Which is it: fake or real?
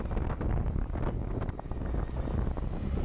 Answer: real